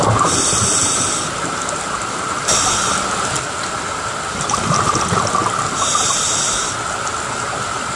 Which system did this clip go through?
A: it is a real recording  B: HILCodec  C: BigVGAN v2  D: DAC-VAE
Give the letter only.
A